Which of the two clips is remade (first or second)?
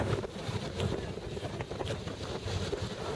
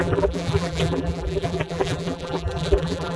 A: second